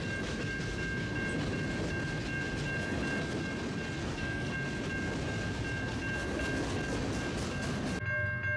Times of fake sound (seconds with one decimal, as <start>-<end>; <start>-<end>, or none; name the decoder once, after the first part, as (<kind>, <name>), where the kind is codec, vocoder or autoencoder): 4.0-4.5 (codec, SNAC)